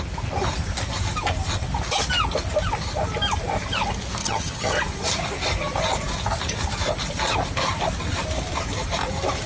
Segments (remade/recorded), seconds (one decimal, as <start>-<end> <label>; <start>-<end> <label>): 0.0-4.2 recorded; 4.2-4.7 remade; 4.7-9.5 recorded